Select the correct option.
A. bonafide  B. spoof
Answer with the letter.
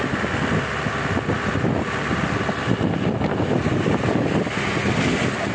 A